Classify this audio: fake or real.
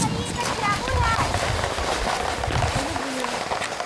real